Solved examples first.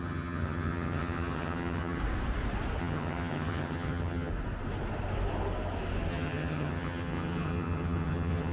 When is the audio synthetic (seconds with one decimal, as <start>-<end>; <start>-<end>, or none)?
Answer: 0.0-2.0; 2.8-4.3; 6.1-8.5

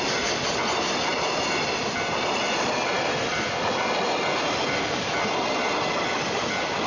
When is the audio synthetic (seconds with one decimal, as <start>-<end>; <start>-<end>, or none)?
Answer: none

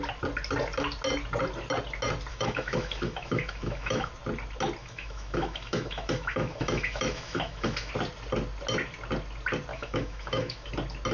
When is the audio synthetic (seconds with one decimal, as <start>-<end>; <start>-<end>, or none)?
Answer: 2.3-4.1; 4.8-7.9; 9.7-10.7

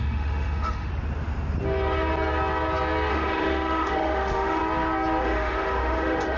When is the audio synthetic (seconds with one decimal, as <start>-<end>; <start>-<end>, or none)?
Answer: 0.0-0.9; 3.1-4.6; 5.2-6.4